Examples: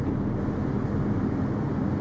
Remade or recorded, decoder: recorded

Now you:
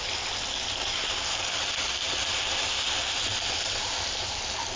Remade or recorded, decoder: recorded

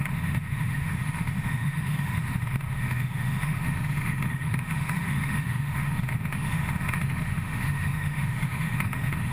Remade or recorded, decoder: remade, autoencoder, DAC-VAE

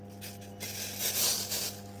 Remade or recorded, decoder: recorded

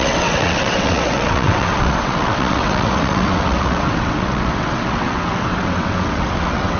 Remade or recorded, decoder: remade, vocoder, WaveNeXt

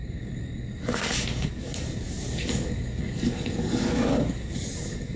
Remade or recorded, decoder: remade, codec, DAC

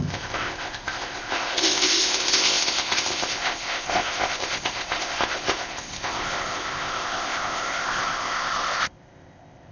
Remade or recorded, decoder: remade, codec, ZipCodec